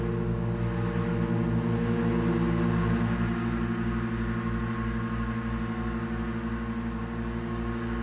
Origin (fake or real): real